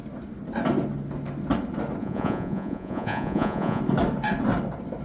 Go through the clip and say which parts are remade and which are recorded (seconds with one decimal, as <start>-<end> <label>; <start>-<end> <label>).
0.0-2.0 recorded; 2.0-3.8 remade; 3.8-5.0 recorded